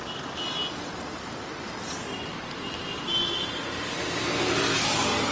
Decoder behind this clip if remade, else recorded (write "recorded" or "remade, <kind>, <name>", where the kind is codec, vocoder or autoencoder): recorded